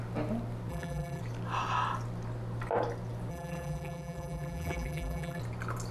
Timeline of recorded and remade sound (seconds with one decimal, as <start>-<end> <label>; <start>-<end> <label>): 0.0-0.7 recorded; 0.7-1.2 remade; 1.2-3.3 recorded; 3.3-5.4 remade; 5.4-5.9 recorded